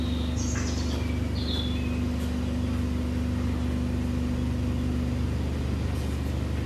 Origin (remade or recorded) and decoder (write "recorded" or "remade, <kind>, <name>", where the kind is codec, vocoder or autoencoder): recorded